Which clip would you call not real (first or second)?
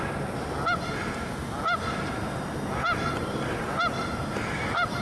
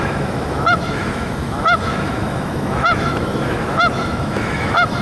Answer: second